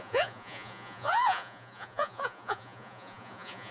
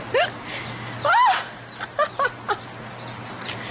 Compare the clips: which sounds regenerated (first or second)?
first